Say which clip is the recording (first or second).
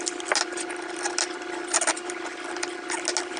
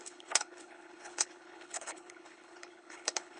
first